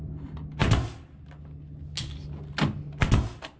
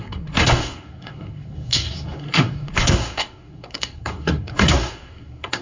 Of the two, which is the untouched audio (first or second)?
first